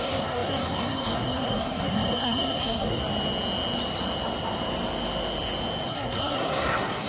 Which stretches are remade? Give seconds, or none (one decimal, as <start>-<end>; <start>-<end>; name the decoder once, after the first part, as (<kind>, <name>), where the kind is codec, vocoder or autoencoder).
0.0-3.0 (codec, SNAC); 5.9-7.1